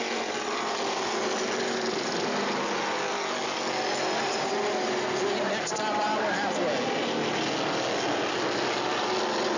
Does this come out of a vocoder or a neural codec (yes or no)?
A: no